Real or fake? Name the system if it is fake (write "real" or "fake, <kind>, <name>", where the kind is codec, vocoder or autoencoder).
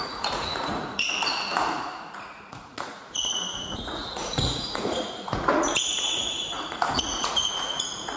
fake, vocoder, Vocos